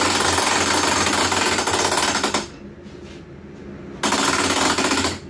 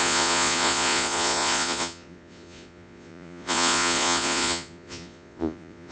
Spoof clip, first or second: second